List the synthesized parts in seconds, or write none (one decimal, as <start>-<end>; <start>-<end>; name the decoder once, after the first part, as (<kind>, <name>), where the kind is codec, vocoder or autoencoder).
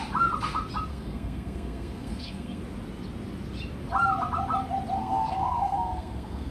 0.9-2.6 (codec, SNAC); 5.0-6.5